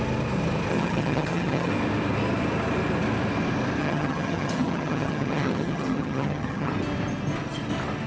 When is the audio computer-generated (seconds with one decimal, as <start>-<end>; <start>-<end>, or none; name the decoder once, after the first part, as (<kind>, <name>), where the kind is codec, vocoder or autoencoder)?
0.7-1.7 (vocoder, HiFi-GAN); 3.8-6.7